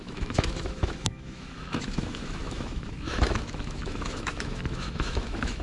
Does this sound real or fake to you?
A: fake